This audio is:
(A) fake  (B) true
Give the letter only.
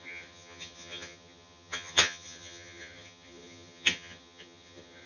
A